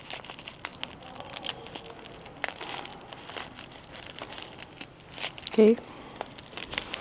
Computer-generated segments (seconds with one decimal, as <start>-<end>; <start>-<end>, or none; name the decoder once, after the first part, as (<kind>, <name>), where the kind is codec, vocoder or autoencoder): none